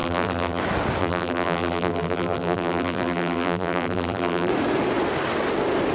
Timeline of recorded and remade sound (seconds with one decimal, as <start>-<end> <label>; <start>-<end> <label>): 0.0-0.6 remade; 0.6-1.0 recorded; 1.0-4.5 remade; 4.5-5.9 recorded